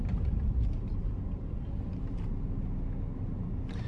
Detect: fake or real real